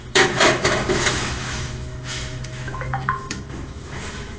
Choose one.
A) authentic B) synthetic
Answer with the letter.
B